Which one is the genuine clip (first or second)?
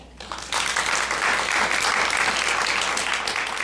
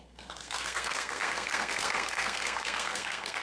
first